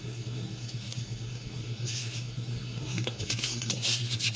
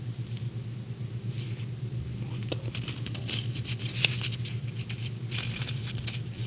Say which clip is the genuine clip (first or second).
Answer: second